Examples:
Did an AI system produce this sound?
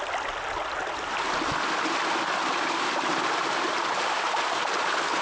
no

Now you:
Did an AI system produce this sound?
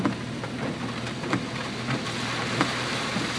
no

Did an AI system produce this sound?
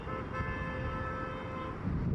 no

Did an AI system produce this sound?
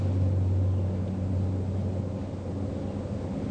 no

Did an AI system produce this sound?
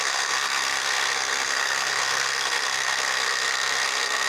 yes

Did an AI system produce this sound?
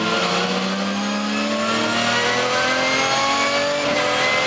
no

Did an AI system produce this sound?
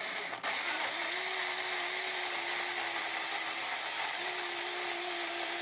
no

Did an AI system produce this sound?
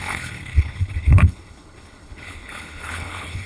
yes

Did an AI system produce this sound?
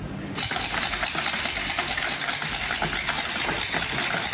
no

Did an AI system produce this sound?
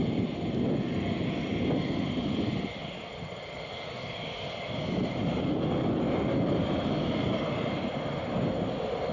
no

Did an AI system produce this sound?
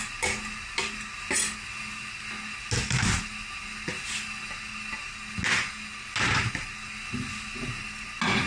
no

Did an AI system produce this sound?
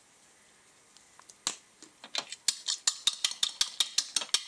no